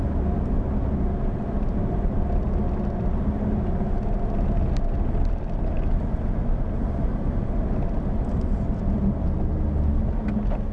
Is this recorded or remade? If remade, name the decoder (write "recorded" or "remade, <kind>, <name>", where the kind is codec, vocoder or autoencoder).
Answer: recorded